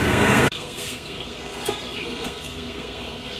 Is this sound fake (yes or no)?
yes